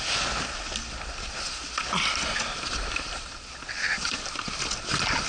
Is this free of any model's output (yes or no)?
yes